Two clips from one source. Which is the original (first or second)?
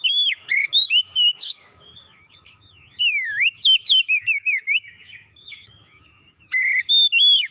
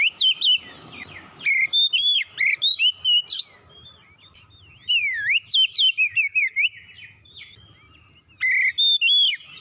second